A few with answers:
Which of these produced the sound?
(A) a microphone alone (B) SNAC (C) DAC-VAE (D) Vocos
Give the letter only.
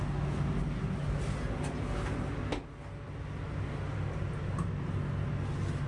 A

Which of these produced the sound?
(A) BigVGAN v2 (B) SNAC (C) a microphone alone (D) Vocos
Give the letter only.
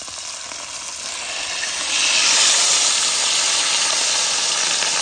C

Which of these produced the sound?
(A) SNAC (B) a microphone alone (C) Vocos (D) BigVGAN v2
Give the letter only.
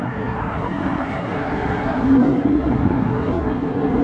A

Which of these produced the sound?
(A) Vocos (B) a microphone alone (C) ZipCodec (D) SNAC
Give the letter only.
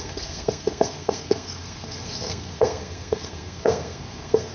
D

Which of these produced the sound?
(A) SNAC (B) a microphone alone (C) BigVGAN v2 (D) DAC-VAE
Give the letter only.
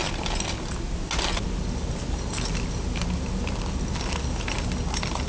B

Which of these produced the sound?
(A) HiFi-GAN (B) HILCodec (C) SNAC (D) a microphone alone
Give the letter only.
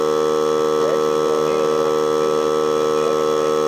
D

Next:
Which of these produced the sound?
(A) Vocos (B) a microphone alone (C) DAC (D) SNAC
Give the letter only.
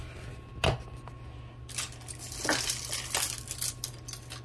B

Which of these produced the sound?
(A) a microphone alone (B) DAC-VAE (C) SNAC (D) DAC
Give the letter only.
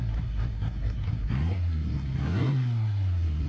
C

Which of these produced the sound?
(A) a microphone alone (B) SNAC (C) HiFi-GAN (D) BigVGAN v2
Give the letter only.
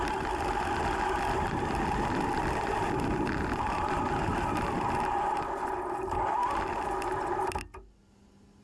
A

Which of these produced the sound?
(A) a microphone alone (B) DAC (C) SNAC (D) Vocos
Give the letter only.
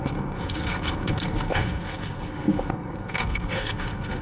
C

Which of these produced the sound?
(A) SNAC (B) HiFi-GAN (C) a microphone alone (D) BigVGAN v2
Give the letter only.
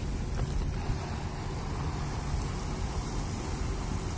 C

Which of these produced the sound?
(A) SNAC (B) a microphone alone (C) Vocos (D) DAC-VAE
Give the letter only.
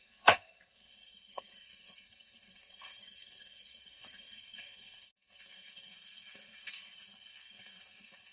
A